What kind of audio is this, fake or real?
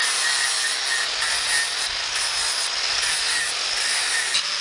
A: real